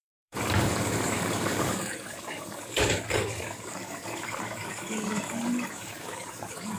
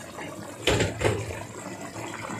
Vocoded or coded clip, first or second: first